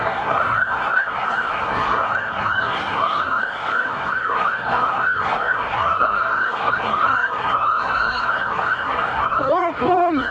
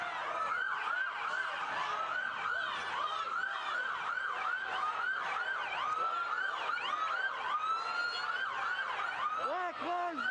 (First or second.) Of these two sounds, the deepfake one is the first